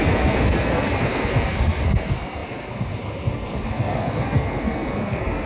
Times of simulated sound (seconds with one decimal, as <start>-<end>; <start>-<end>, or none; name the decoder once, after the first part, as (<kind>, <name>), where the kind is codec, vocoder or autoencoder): 0.0-5.5 (codec, SNAC)